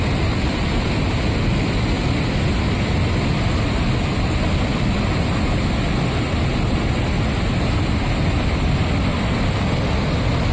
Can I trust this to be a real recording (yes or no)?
yes